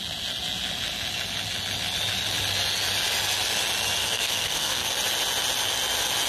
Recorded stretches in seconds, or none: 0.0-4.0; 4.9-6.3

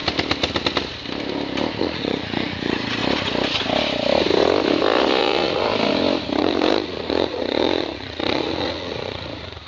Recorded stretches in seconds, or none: 0.0-1.8; 3.0-5.2; 5.7-6.4

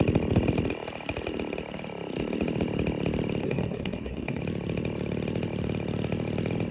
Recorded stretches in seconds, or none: 0.0-3.4; 4.4-6.7